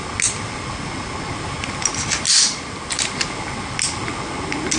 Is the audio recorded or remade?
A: recorded